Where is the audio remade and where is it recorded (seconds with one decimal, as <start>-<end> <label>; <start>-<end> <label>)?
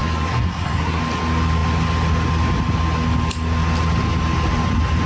0.0-1.0 remade; 1.0-5.1 recorded